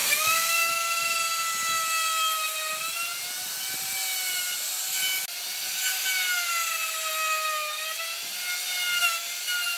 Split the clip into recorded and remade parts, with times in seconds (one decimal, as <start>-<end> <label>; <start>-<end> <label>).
0.0-0.7 remade; 0.7-9.8 recorded